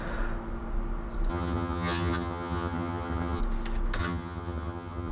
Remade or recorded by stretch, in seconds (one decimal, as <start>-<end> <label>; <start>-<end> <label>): 0.0-1.3 recorded; 1.3-3.4 remade; 3.4-4.0 recorded; 4.0-5.1 remade